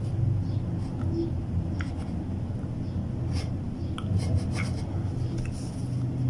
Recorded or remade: recorded